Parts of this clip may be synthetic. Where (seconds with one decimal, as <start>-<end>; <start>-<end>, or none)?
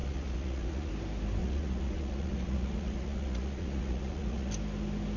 0.0-0.9; 1.4-4.5